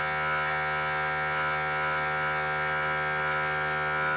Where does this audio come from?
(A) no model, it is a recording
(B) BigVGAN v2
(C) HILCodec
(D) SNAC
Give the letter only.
A